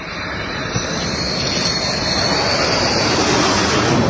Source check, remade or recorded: recorded